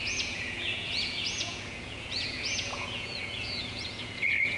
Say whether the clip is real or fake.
fake